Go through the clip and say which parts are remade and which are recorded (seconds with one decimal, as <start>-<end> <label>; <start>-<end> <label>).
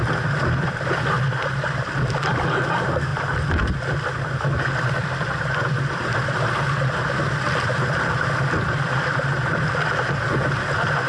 0.0-3.1 remade; 3.1-4.4 recorded; 4.4-11.1 remade